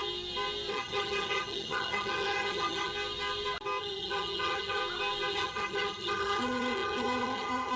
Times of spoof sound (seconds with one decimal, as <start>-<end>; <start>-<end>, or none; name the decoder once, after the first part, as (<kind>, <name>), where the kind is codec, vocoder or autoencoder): 0.7-2.9 (vocoder, HiFi-GAN); 3.8-4.8; 5.3-7.8